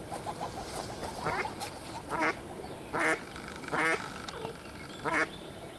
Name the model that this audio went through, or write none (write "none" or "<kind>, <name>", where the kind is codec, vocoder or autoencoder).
none